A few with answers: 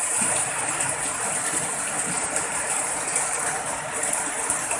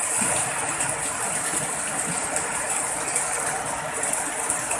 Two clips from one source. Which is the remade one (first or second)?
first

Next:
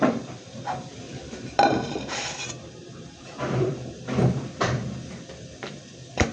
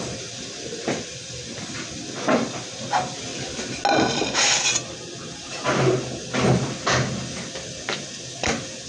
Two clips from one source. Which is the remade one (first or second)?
first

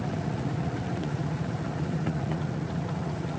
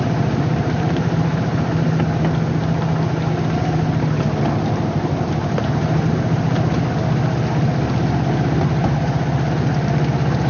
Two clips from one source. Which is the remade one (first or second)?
first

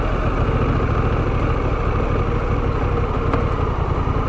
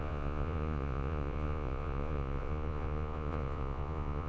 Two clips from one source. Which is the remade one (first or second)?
second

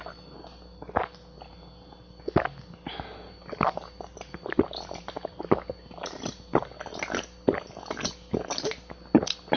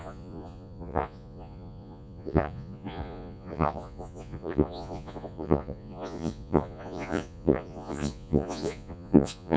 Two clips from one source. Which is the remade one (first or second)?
second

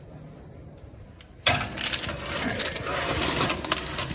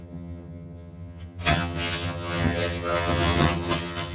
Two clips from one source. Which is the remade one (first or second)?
second